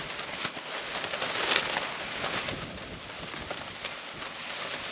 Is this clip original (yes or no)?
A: yes